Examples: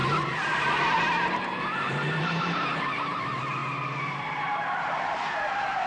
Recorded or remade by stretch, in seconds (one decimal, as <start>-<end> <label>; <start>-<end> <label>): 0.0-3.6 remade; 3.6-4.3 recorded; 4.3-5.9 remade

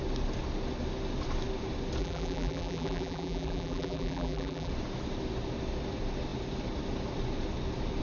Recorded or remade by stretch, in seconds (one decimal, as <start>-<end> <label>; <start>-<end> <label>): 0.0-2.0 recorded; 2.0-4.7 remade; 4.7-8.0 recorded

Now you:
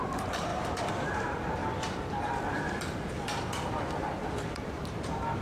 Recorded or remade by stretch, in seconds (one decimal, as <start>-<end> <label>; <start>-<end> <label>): 0.0-0.5 remade; 0.5-1.1 recorded; 1.1-1.6 remade; 1.6-4.5 recorded; 4.5-5.4 remade

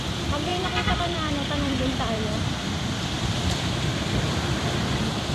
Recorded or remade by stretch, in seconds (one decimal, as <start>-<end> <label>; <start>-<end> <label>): 0.0-0.5 recorded; 0.5-3.4 remade; 3.4-5.3 recorded

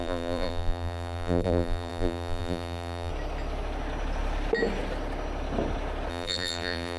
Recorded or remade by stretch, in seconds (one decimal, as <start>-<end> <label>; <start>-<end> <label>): 0.0-3.1 remade; 3.1-6.1 recorded; 6.1-7.0 remade